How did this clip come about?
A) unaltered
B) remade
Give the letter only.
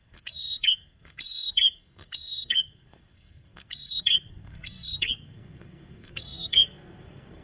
B